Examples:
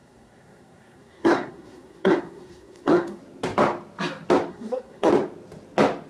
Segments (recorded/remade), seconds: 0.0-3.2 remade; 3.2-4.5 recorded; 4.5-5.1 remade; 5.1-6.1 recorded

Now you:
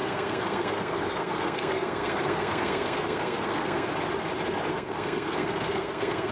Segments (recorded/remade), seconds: 0.0-3.9 remade; 3.9-4.7 recorded; 4.7-6.3 remade

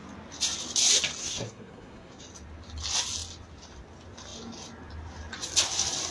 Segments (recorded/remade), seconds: 0.0-1.2 recorded; 1.2-2.2 remade; 2.2-6.1 recorded

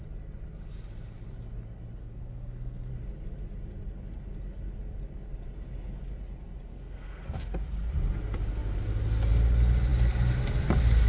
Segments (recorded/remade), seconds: 0.0-2.0 recorded; 2.0-2.9 remade; 2.9-6.7 recorded; 6.7-7.2 remade; 7.2-11.1 recorded

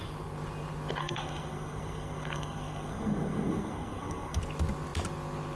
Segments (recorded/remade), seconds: 0.0-1.0 recorded; 1.0-4.4 remade; 4.4-5.6 recorded